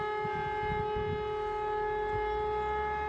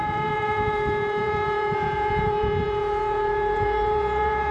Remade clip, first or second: second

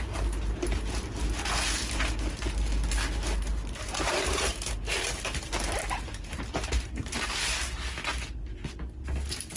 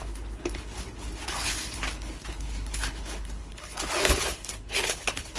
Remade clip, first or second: second